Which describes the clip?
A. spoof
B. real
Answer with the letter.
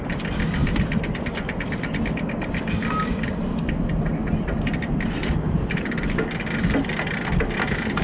B